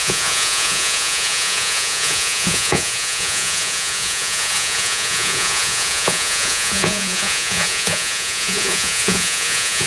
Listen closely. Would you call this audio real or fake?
fake